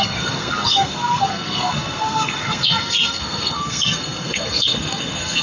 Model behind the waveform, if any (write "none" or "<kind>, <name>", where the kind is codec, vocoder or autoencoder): codec, SNAC